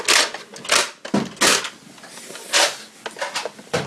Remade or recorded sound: recorded